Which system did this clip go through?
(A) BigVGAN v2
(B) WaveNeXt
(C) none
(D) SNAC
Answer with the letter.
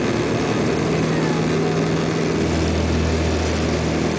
C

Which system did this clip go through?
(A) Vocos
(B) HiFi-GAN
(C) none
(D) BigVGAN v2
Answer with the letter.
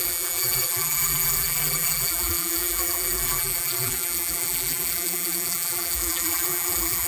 D